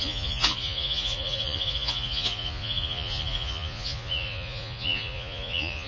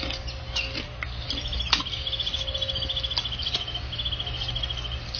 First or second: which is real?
second